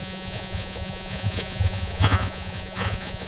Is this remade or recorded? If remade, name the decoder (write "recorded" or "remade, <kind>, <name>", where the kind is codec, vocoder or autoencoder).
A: remade, vocoder, Vocos